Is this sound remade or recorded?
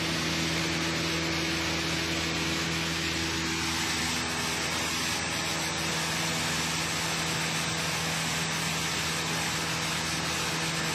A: recorded